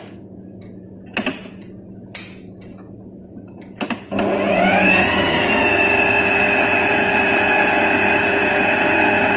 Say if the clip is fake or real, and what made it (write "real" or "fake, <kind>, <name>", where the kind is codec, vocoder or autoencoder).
fake, vocoder, Vocos